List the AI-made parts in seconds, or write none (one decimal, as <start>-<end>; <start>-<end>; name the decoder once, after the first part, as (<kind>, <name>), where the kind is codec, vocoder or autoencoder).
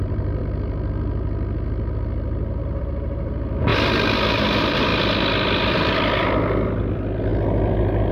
0.0-0.4 (vocoder, BigVGAN v2); 2.8-3.7; 4.3-4.9; 5.6-7.3